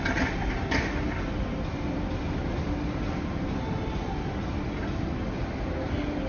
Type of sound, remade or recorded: recorded